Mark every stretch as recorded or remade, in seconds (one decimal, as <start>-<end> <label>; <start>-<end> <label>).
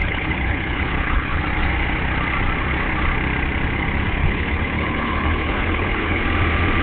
0.0-1.4 remade; 1.4-4.2 recorded; 4.2-6.2 remade; 6.2-6.8 recorded